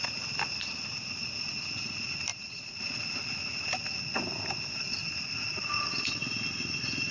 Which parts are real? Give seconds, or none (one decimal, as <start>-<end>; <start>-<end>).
0.0-7.1